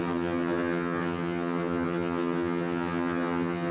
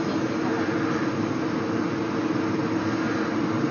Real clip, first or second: second